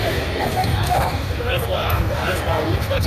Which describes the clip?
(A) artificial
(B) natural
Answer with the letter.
A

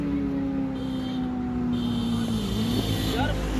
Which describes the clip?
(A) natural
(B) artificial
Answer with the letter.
A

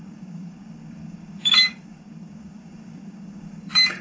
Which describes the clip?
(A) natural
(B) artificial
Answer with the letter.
B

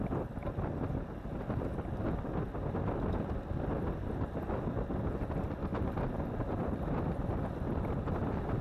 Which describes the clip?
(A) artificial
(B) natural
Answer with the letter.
B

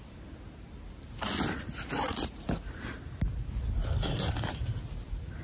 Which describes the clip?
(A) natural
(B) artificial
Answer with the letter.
A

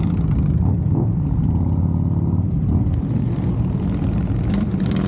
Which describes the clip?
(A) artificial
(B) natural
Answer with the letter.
B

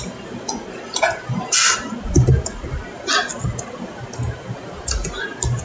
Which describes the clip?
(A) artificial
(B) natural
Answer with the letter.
B